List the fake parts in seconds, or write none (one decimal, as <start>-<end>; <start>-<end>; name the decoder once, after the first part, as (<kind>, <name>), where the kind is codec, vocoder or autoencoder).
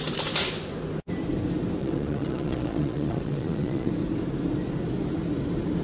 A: 1.8-3.9 (vocoder, Vocos)